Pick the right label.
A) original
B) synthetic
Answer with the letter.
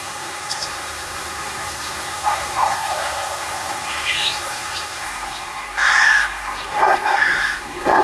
B